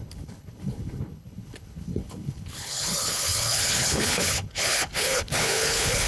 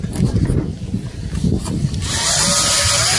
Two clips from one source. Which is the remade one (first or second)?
first